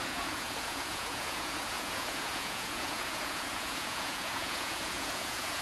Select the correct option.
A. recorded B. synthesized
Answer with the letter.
B